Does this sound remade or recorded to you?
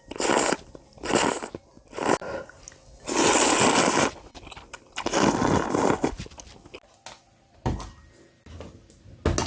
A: recorded